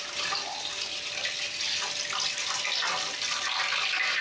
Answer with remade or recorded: recorded